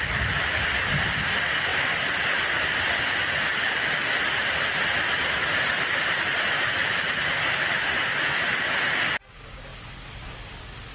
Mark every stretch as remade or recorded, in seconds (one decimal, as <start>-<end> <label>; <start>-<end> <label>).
0.0-10.9 recorded